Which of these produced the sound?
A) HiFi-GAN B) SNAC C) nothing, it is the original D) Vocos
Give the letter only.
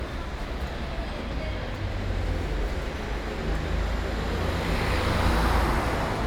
C